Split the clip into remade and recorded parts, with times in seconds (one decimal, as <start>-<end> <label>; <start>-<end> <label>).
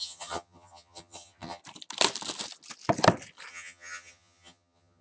0.0-1.6 remade; 1.6-3.5 recorded; 3.5-5.0 remade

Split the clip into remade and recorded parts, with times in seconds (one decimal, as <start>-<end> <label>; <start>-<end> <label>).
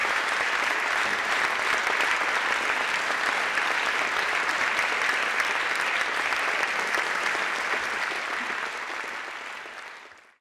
0.0-1.4 remade; 1.4-10.4 recorded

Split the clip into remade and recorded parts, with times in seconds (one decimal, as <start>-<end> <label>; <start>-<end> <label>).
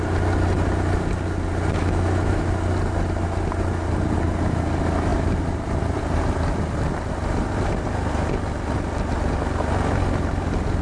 0.0-1.8 recorded; 1.8-2.4 remade; 2.4-10.8 recorded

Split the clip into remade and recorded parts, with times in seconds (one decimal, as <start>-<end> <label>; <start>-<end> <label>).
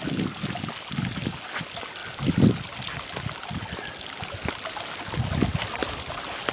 0.0-6.5 recorded